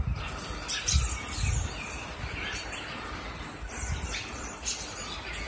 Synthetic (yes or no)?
no